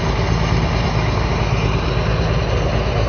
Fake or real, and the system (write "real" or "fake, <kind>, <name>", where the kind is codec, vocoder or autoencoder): real